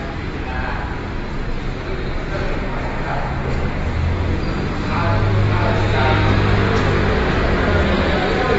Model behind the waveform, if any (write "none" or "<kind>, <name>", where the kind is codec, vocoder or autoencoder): none